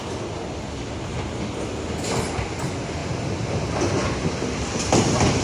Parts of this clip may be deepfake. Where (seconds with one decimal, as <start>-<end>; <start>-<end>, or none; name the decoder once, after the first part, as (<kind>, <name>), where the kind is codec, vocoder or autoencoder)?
3.0-3.7 (vocoder, BigVGAN v2)